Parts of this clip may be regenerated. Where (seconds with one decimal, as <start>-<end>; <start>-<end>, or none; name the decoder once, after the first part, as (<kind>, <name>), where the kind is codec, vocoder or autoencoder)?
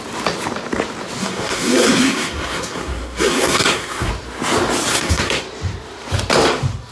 1.2-4.1 (codec, SNAC); 4.9-5.4